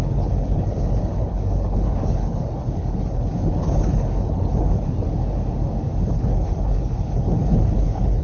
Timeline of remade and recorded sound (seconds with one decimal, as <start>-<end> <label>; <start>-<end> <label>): 0.0-5.1 remade; 5.1-6.1 recorded; 6.1-8.2 remade

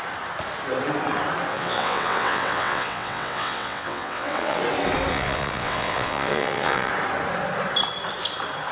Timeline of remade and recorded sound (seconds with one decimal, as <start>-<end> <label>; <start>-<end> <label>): 0.0-1.5 recorded; 1.5-4.6 remade; 4.6-5.1 recorded; 5.1-6.9 remade; 6.9-8.7 recorded

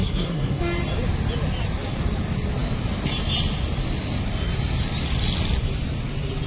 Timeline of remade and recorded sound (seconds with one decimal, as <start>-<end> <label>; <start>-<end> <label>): 0.0-0.6 remade; 0.6-6.5 recorded

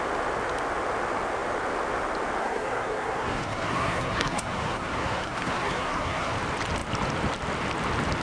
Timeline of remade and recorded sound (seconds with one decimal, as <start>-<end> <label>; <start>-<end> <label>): 0.0-2.4 recorded; 2.4-6.3 remade; 6.3-8.2 recorded

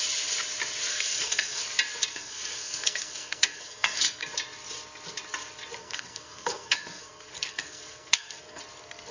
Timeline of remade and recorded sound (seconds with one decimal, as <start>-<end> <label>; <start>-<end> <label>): 0.0-0.9 recorded; 0.9-1.6 remade; 1.6-2.1 recorded; 2.1-4.2 remade; 4.2-5.8 recorded; 5.8-8.6 remade; 8.6-9.1 recorded

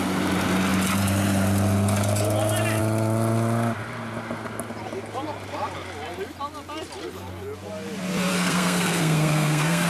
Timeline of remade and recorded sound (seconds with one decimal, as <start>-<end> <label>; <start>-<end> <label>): 0.0-8.3 recorded; 8.3-9.9 remade